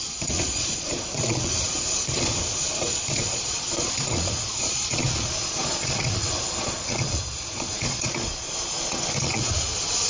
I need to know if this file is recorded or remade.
remade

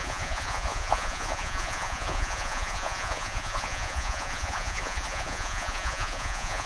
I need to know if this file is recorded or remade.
remade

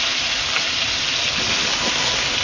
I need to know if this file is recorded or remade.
recorded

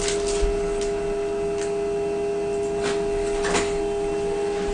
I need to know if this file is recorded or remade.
recorded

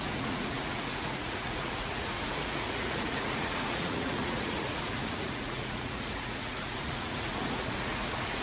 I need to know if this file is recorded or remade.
remade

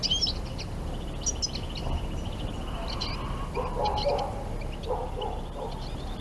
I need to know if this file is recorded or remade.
recorded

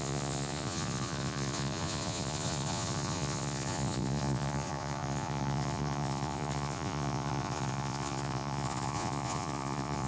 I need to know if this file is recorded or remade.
remade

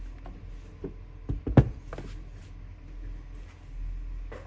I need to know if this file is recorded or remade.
recorded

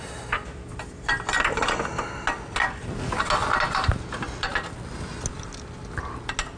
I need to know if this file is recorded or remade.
recorded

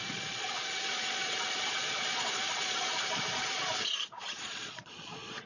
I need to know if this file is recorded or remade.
remade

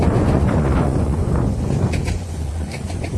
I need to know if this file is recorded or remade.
remade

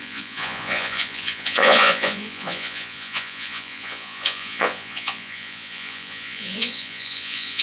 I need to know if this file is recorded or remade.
remade